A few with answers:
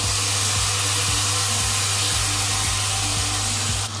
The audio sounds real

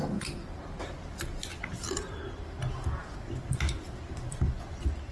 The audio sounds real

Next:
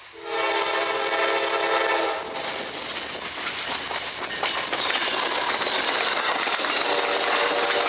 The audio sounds real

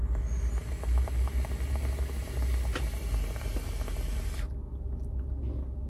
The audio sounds real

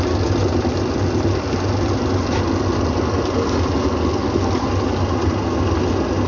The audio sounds real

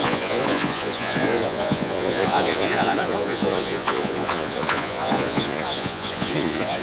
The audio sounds fake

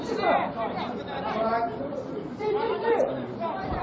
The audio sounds fake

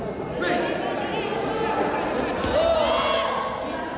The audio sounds real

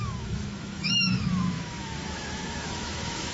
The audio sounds fake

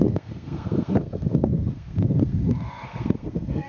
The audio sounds fake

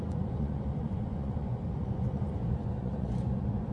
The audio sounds fake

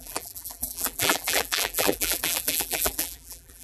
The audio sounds fake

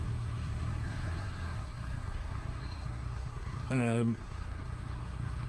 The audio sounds fake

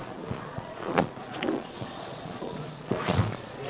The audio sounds fake